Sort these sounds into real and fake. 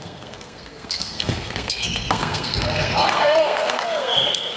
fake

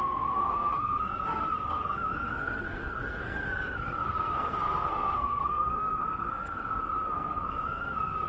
fake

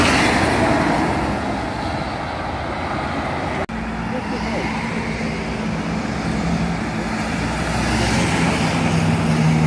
real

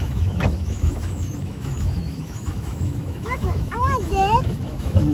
fake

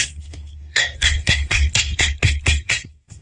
fake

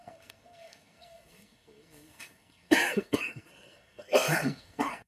fake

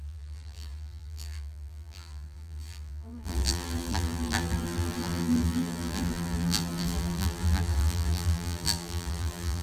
fake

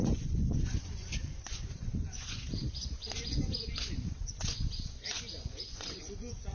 fake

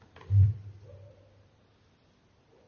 real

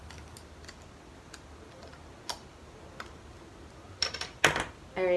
real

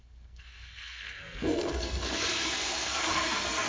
fake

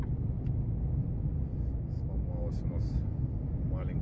real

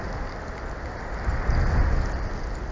real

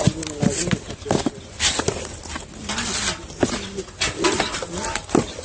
real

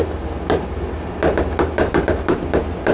real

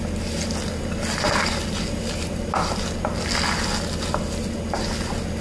real